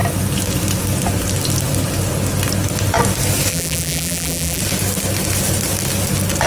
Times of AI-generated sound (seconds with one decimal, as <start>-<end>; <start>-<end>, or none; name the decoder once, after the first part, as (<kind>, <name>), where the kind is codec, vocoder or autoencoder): 3.5-4.6 (vocoder, BigVGAN v2)